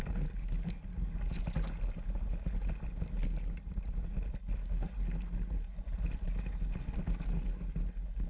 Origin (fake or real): real